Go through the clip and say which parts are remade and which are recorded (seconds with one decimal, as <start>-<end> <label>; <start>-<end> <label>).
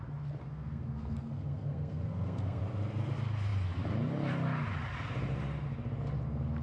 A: 0.0-0.4 recorded; 0.4-2.6 remade; 2.6-6.6 recorded